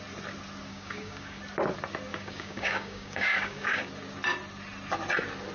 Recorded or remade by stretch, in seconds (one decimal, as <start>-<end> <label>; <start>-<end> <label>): 0.0-0.7 recorded; 0.7-1.4 remade; 1.4-2.1 recorded; 2.1-3.9 remade; 3.9-5.5 recorded